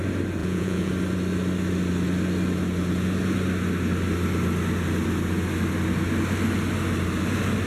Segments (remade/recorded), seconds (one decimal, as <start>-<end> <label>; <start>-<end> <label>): 0.0-0.4 recorded; 0.4-0.9 remade; 0.9-7.7 recorded